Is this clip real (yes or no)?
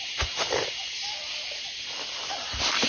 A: yes